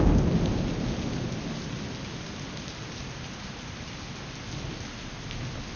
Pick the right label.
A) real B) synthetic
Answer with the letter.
A